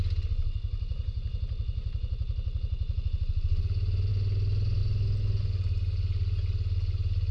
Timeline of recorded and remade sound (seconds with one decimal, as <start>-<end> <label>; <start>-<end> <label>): 0.0-7.3 recorded